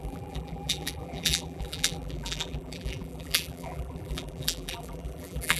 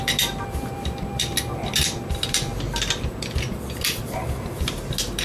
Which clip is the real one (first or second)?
second